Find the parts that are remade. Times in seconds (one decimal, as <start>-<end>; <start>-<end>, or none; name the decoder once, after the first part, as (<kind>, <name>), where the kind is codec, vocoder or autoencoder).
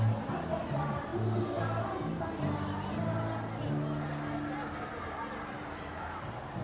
0.0-1.1 (vocoder, BigVGAN v2); 5.0-6.6